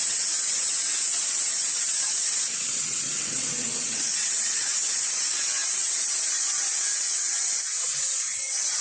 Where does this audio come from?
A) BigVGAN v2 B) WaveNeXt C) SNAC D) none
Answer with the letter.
B